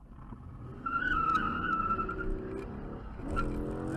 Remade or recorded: recorded